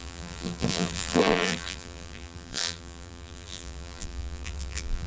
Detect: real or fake fake